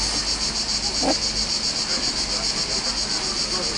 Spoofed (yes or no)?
no